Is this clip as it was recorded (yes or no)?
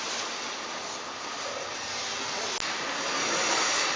yes